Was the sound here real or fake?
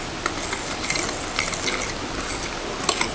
real